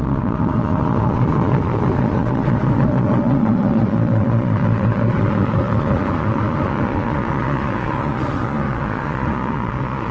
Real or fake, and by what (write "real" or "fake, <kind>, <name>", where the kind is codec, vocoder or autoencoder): fake, vocoder, Vocos